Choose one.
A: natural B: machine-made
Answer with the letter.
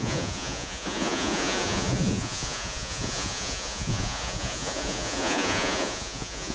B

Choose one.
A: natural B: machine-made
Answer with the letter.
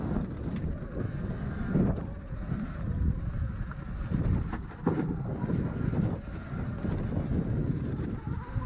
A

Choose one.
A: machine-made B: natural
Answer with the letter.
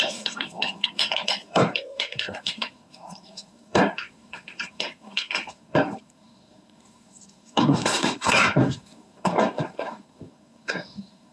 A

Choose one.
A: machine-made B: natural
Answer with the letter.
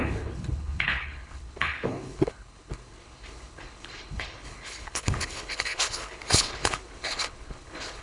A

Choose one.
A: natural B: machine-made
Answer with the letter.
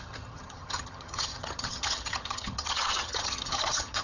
B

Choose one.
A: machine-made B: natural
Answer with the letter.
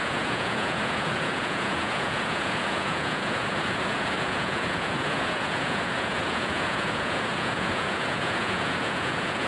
A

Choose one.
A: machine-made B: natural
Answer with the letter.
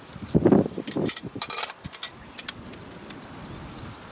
B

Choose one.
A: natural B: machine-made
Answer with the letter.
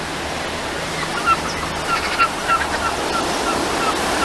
A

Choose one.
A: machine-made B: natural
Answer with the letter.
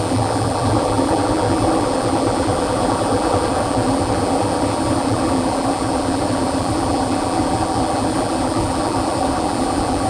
A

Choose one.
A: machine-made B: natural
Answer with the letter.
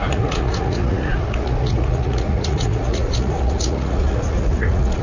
A